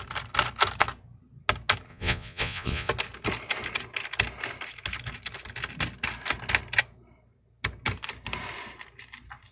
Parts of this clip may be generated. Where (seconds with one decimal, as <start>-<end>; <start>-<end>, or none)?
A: 1.9-2.9